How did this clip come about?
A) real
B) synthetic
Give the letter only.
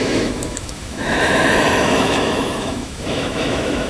B